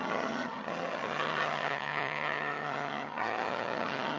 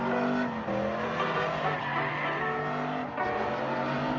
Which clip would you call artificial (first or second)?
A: first